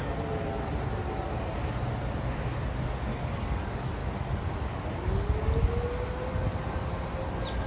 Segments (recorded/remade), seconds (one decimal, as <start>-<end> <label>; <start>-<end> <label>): 0.0-3.1 recorded; 3.1-3.6 remade; 3.6-7.7 recorded